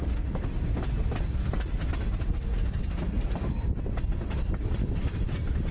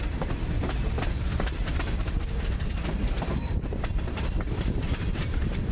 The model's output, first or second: second